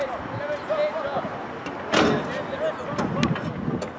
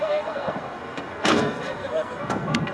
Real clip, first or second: first